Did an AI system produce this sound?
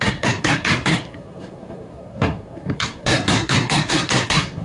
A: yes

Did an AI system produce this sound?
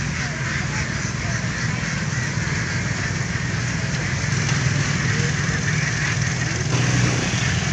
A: no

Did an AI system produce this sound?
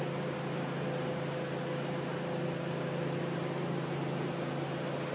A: no